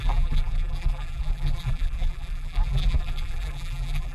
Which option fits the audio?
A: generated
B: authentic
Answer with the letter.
A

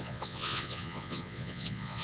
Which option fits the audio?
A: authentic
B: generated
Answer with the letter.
B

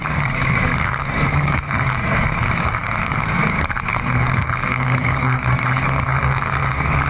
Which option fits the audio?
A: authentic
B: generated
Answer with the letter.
B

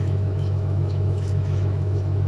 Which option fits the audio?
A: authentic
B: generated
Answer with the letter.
B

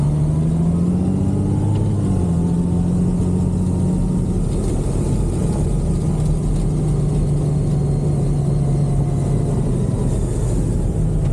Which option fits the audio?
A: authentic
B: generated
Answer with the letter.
A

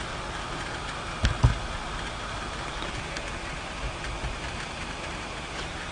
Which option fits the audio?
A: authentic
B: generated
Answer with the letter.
A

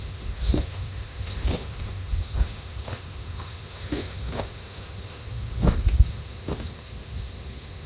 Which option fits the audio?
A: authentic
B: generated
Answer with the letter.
B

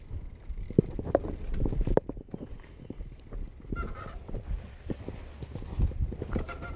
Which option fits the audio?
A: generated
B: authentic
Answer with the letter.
B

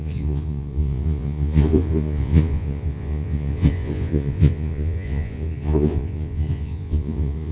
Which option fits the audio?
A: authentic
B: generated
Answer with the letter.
B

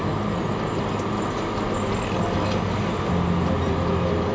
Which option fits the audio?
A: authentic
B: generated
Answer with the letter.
A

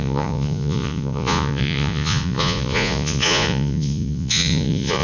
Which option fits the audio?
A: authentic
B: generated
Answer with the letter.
B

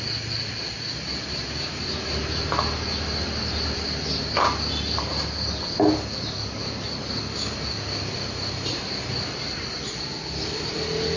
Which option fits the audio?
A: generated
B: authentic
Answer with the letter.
B